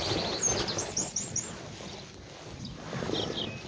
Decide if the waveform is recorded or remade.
recorded